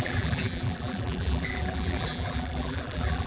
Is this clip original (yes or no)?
no